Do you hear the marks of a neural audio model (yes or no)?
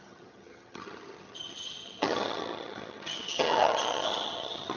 yes